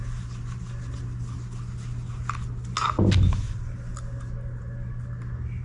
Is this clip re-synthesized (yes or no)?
no